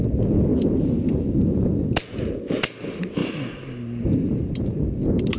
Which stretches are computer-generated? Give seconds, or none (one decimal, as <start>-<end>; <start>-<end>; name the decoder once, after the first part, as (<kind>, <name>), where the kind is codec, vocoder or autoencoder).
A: none